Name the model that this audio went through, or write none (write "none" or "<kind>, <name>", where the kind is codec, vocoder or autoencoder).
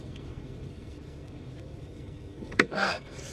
codec, SNAC